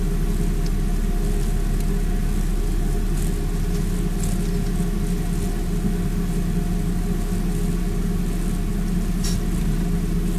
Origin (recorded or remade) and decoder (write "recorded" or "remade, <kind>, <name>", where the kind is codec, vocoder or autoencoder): recorded